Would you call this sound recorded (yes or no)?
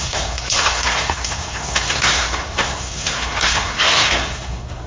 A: no